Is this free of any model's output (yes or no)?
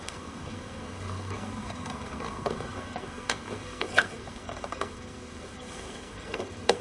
no